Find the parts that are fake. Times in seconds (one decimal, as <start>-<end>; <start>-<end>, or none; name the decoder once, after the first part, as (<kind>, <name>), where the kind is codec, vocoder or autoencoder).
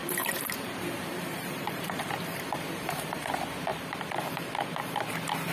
0.0-3.3 (vocoder, BigVGAN v2)